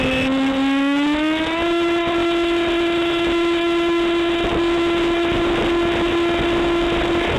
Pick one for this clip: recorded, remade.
recorded